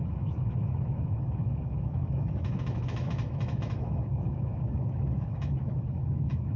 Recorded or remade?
remade